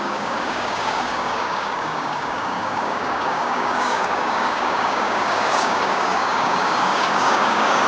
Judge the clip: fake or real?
fake